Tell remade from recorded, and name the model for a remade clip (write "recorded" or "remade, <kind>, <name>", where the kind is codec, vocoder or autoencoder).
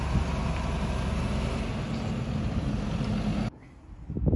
recorded